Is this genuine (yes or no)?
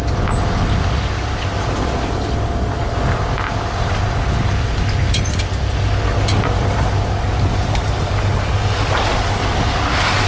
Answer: yes